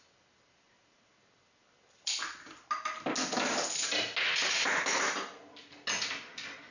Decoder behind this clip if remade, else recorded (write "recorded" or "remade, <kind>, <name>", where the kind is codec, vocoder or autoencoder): recorded